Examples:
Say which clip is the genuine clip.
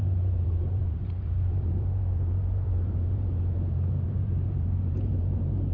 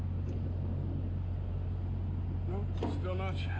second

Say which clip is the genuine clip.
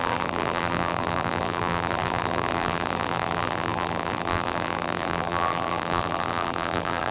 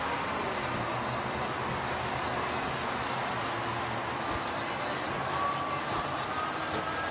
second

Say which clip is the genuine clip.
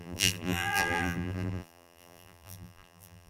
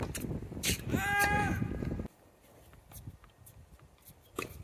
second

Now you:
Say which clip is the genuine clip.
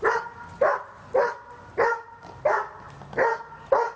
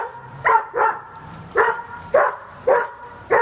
first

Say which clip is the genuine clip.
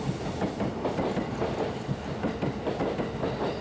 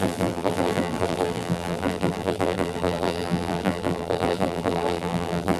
first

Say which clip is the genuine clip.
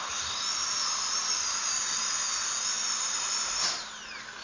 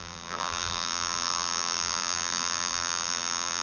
first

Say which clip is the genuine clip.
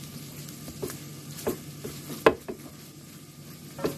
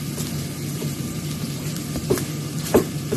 first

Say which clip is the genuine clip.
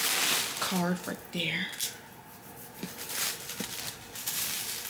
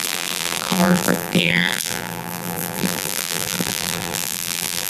first